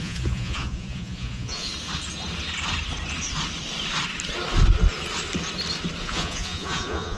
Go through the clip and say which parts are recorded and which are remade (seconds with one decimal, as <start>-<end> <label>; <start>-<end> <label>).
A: 0.0-1.7 remade; 1.7-6.0 recorded; 6.0-7.2 remade